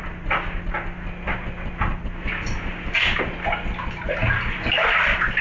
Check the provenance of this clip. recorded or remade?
recorded